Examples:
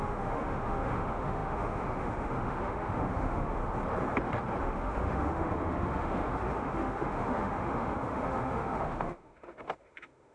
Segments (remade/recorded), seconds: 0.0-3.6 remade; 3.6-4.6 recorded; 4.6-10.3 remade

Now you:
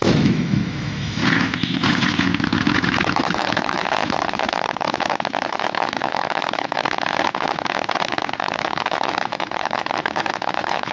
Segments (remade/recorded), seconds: 0.0-1.2 remade; 1.2-3.0 recorded; 3.0-3.8 remade; 3.8-5.4 recorded; 5.4-6.8 remade; 6.8-8.4 recorded; 8.4-10.9 remade

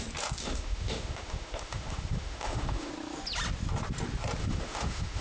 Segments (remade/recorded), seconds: 0.0-0.4 recorded; 0.4-2.9 remade; 2.9-4.4 recorded; 4.4-5.2 remade

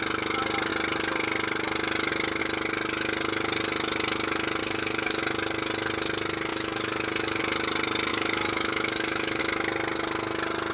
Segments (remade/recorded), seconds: 0.0-4.6 recorded; 4.6-5.2 remade; 5.2-6.5 recorded; 6.5-7.4 remade; 7.4-8.1 recorded; 8.1-9.4 remade; 9.4-10.7 recorded

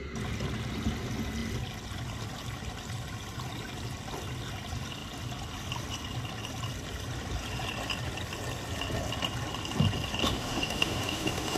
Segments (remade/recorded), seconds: 0.0-10.2 recorded; 10.2-11.6 remade